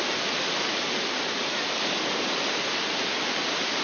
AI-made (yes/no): no